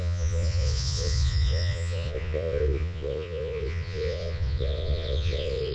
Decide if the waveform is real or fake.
fake